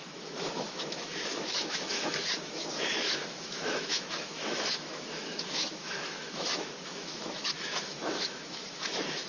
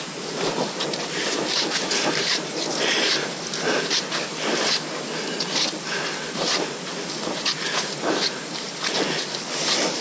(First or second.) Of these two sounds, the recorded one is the second